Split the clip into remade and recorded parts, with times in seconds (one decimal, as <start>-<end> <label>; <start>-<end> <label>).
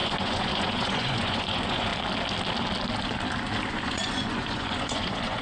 0.0-1.9 remade; 1.9-3.7 recorded; 3.7-5.4 remade